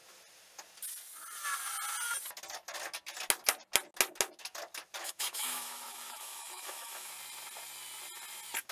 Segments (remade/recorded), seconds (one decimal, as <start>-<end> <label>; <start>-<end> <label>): 0.0-5.0 recorded; 5.0-7.1 remade; 7.1-8.7 recorded